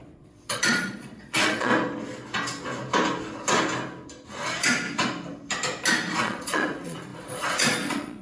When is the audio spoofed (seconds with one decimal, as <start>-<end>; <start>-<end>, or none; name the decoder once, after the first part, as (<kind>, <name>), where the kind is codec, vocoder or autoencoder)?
0.0-1.7 (vocoder, Vocos); 6.2-8.2